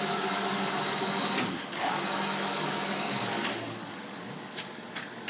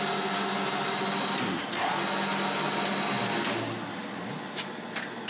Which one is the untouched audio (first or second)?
second